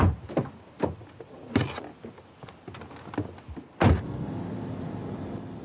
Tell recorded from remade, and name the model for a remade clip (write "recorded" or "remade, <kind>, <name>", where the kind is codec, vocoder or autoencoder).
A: recorded